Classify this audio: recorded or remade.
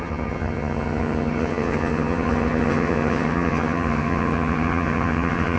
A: remade